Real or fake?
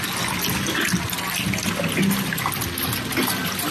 real